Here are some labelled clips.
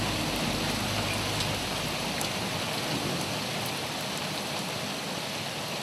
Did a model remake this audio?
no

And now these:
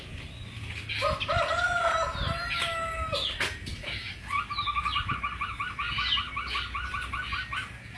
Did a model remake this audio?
no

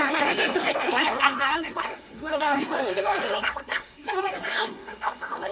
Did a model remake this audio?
yes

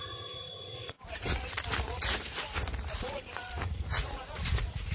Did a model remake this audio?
yes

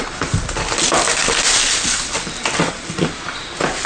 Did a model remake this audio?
no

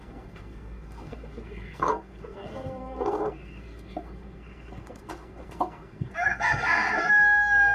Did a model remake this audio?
yes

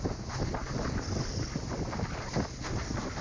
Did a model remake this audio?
no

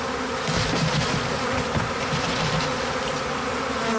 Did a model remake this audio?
no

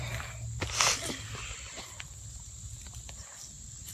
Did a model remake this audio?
no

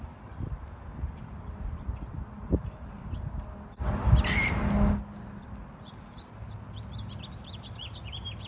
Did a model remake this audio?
no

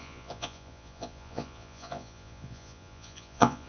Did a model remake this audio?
yes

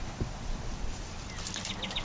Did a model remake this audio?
no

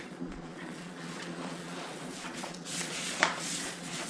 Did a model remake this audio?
yes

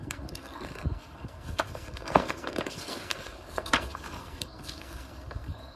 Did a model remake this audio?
yes